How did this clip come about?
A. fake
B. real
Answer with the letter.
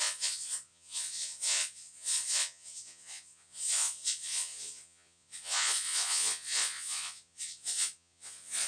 A